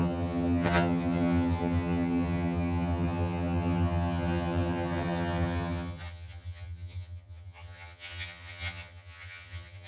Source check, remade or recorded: remade